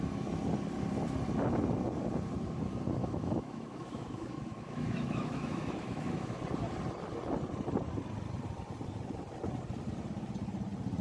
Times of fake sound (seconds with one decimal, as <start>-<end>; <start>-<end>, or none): 3.0-6.4